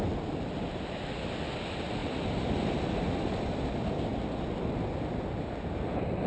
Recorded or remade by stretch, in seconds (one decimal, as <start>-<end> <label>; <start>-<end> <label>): 0.0-6.3 recorded